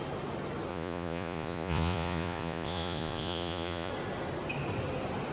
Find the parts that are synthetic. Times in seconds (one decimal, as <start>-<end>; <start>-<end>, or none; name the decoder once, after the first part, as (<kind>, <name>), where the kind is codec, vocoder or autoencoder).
0.7-3.9 (vocoder, Vocos)